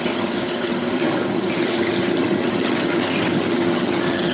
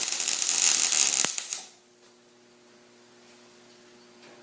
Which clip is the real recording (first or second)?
second